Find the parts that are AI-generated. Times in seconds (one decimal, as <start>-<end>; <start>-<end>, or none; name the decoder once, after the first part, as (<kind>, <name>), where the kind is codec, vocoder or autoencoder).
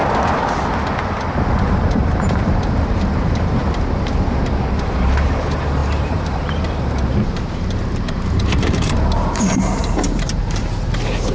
1.6-3.6 (vocoder, BigVGAN v2); 4.7-11.3